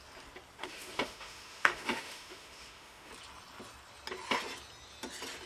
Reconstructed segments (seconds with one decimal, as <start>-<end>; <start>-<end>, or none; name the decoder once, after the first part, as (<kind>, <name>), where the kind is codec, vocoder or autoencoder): 0.6-3.1 (autoencoder, DAC-VAE)